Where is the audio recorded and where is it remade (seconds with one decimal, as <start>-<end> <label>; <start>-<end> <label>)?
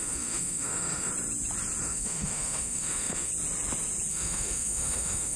0.0-1.1 remade; 1.1-1.8 recorded; 1.8-3.3 remade; 3.3-4.1 recorded; 4.1-5.4 remade